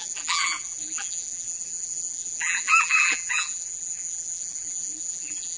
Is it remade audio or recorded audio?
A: remade